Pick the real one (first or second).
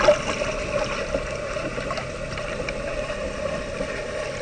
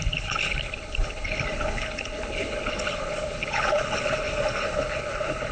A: first